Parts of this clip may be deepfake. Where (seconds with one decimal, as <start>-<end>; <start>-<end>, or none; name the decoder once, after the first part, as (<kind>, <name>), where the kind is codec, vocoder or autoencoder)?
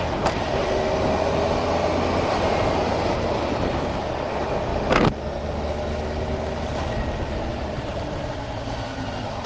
none